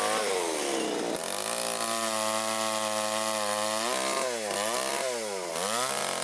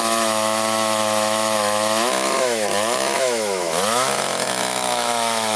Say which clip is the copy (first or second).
second